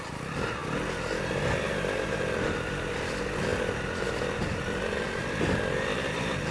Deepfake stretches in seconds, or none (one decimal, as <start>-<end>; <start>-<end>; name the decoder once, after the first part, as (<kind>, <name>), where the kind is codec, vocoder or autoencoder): none